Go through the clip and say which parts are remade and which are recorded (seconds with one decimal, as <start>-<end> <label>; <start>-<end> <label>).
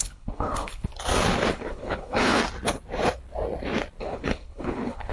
0.0-0.9 remade; 0.9-1.5 recorded; 1.5-2.4 remade; 2.4-4.0 recorded; 4.0-5.1 remade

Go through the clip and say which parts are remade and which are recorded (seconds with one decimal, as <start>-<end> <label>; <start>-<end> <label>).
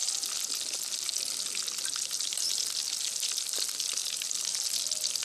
0.0-5.2 recorded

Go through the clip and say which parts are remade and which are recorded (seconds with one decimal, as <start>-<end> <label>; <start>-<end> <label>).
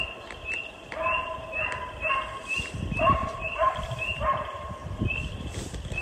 0.0-3.2 recorded; 3.2-3.7 remade; 3.7-4.8 recorded; 4.8-5.4 remade; 5.4-6.0 recorded